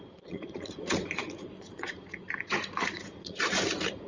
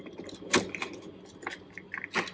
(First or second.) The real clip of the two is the second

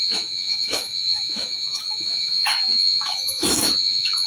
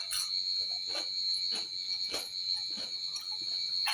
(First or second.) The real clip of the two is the second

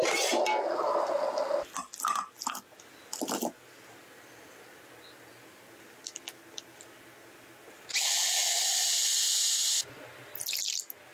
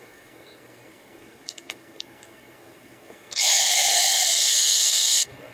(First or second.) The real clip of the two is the first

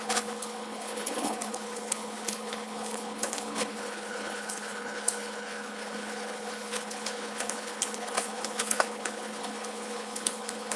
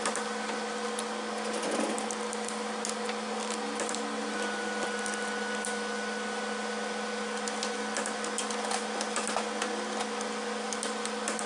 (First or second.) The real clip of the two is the second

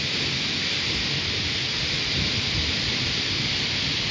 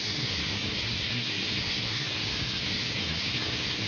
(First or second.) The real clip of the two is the first